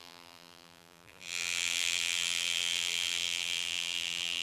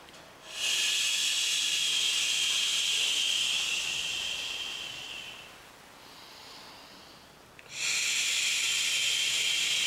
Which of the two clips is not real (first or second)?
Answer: first